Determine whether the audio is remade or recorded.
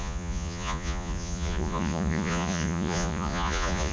remade